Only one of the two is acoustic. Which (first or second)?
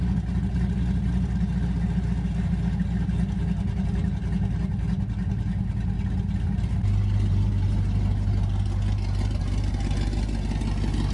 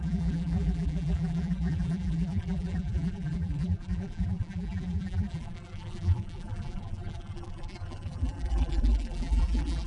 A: first